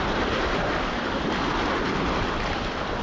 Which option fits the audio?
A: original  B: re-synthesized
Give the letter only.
A